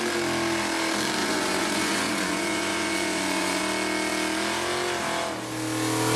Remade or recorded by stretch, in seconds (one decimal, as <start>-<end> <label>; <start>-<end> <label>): 0.0-1.2 recorded; 1.2-3.6 remade; 3.6-6.2 recorded